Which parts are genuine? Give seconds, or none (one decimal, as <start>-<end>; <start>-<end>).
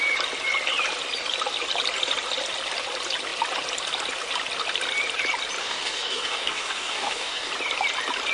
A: 0.0-5.6; 7.5-8.3